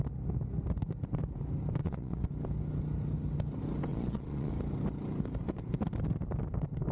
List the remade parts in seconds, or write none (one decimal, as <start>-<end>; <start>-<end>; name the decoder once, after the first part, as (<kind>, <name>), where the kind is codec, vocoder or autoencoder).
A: 1.8-2.3 (vocoder, Vocos); 3.9-4.5